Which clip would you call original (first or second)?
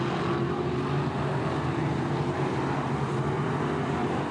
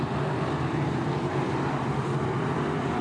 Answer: first